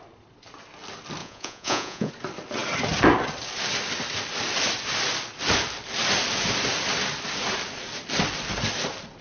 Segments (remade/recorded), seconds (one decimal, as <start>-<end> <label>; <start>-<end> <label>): 0.0-1.2 recorded; 1.2-2.1 remade; 2.1-9.2 recorded